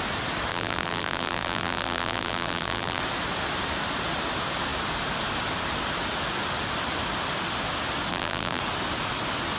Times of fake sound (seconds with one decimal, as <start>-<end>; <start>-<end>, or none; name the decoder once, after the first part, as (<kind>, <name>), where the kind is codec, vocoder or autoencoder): 0.5-3.0 (vocoder, BigVGAN v2); 8.1-8.6